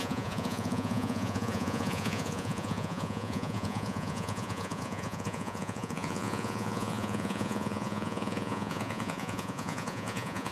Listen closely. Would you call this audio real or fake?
fake